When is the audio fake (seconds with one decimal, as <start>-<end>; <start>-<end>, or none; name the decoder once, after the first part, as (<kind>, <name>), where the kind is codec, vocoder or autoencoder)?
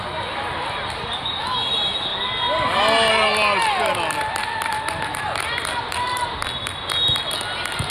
4.7-6.2 (vocoder, BigVGAN v2)